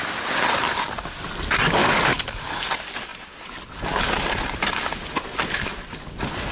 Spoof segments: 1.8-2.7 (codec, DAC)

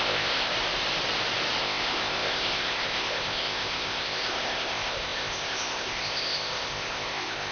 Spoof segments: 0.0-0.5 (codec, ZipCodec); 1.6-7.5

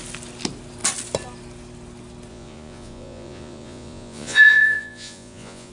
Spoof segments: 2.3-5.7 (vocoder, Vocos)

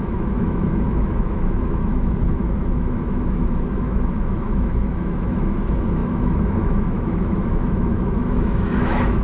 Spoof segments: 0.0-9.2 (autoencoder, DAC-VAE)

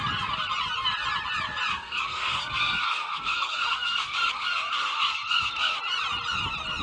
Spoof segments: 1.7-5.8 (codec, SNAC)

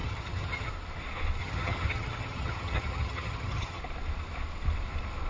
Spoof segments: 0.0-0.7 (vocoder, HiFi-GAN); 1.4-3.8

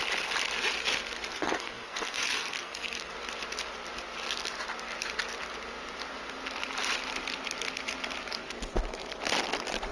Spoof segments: 1.3-3.1 (codec, SNAC)

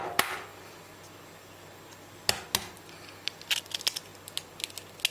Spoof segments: none